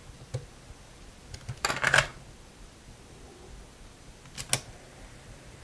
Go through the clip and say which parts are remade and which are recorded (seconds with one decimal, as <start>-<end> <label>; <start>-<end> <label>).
0.0-5.6 recorded